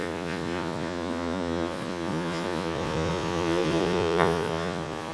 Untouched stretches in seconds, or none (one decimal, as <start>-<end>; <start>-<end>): none